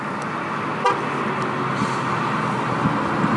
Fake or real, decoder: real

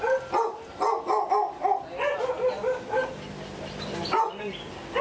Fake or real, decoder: real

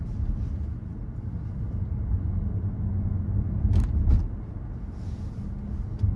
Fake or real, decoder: real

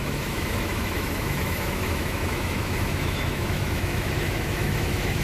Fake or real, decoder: fake, autoencoder, DAC-VAE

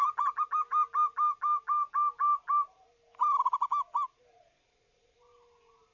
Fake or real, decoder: real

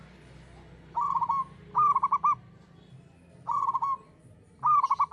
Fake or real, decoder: real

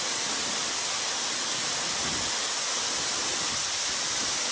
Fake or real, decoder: real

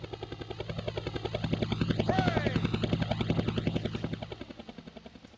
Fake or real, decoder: real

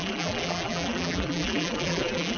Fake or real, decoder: fake, vocoder, BigVGAN v2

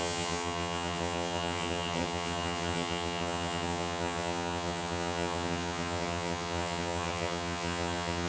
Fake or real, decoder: fake, vocoder, HiFi-GAN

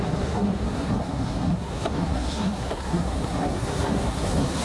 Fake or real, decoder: fake, codec, SNAC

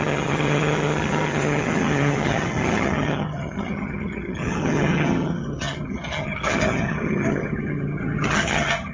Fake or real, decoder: fake, vocoder, HiFi-GAN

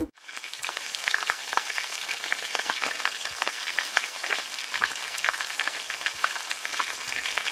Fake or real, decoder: fake, codec, SNAC